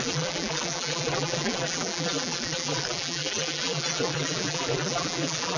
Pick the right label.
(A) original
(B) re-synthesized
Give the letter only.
B